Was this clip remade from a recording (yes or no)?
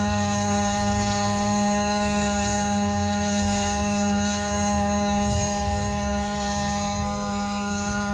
yes